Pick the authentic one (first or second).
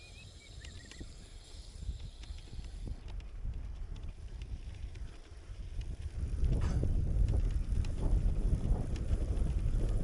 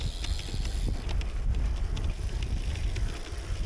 second